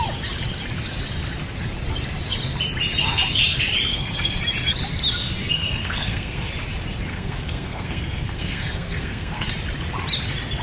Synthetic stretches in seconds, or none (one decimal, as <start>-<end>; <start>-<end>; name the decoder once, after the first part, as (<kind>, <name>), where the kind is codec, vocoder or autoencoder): 3.9-4.4 (codec, SNAC); 5.4-6.5; 7.1-9.5